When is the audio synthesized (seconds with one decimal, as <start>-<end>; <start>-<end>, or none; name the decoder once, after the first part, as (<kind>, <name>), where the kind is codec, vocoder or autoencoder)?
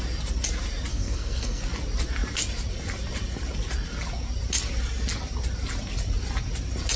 0.9-1.6 (codec, SNAC)